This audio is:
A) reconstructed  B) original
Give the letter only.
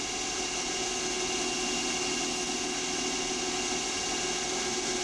A